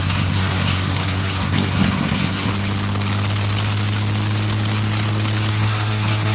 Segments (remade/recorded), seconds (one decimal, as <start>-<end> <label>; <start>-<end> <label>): 0.0-2.5 remade; 2.5-5.5 recorded; 5.5-6.3 remade